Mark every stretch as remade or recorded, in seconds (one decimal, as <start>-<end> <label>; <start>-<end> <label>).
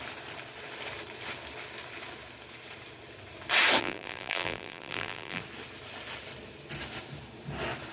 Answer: 0.0-3.8 recorded; 3.8-5.4 remade; 5.4-7.9 recorded